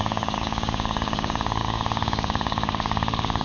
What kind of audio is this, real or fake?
fake